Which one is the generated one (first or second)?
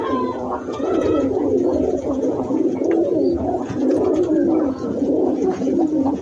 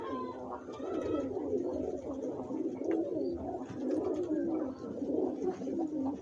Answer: first